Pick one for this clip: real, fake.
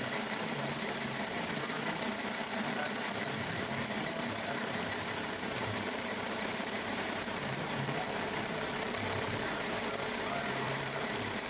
fake